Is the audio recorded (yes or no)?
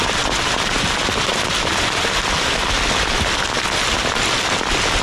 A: yes